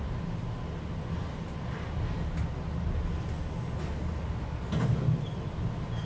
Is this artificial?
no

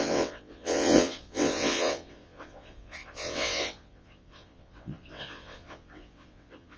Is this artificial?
yes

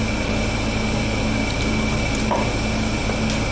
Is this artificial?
no